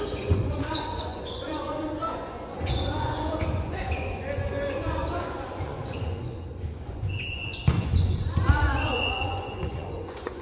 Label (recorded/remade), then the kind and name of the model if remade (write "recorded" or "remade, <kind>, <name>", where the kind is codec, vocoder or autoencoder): remade, vocoder, Vocos